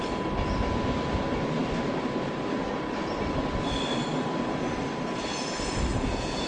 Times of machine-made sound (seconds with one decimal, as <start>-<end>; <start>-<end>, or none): 5.9-6.5